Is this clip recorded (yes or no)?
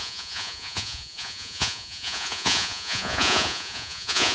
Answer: no